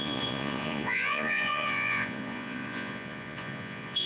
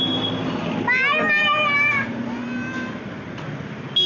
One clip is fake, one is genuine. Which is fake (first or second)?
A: first